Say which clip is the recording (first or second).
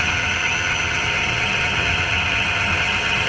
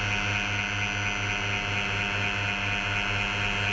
second